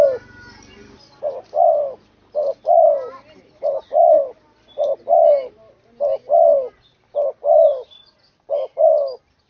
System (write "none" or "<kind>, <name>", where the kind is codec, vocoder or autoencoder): none